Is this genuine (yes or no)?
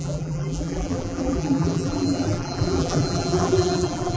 no